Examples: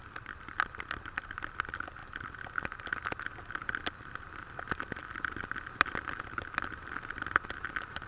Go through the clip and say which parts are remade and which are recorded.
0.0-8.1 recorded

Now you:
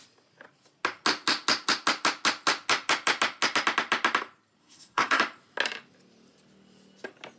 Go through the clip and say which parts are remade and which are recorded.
0.0-4.6 recorded; 4.6-5.2 remade; 5.2-7.4 recorded

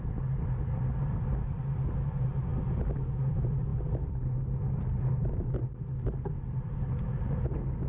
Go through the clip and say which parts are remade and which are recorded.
0.0-7.9 recorded

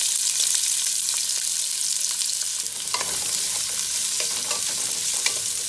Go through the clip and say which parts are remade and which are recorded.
0.0-1.8 remade; 1.8-2.9 recorded; 2.9-4.0 remade; 4.0-4.6 recorded; 4.6-5.7 remade

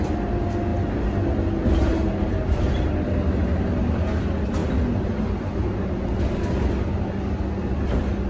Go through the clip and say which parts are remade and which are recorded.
0.0-8.3 recorded

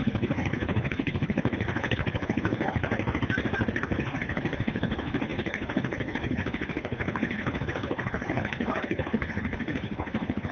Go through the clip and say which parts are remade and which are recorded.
0.0-2.9 remade; 2.9-3.8 recorded; 3.8-10.5 remade